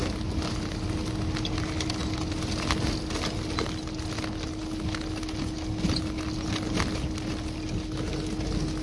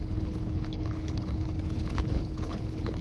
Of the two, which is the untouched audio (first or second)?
first